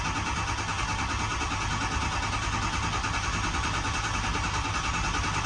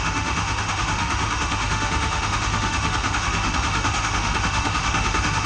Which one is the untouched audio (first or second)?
first